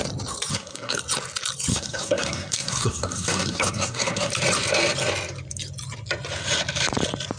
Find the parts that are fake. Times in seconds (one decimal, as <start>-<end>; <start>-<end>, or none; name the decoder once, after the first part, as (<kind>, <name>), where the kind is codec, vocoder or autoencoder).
0.5-1.0 (codec, SNAC); 1.7-4.3